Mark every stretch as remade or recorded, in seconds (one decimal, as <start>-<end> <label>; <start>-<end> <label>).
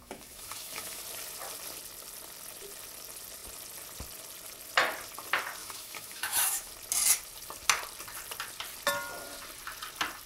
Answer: 0.0-1.0 remade; 1.0-5.6 recorded; 5.6-6.7 remade; 6.7-10.3 recorded